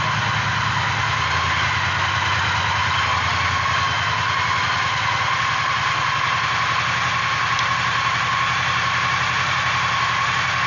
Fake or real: real